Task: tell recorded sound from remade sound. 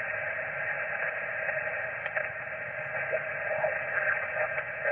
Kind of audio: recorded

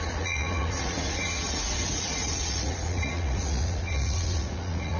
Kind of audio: remade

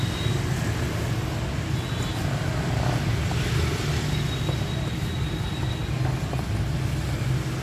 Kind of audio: recorded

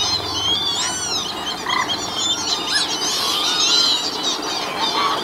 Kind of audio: recorded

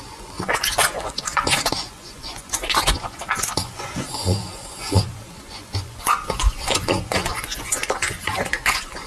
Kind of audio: remade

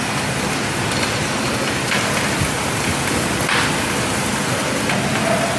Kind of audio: recorded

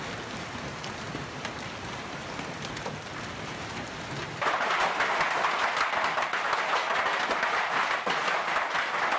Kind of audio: recorded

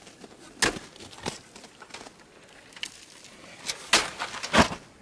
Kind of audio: recorded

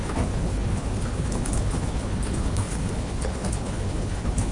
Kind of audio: remade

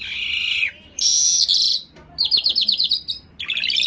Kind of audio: remade